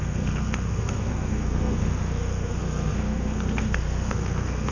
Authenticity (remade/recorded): remade